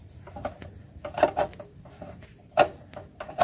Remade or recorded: recorded